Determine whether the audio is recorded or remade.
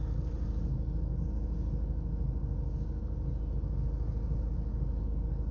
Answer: recorded